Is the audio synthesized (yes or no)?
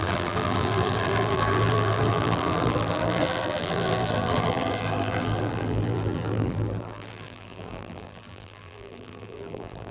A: yes